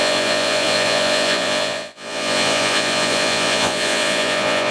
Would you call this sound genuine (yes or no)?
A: no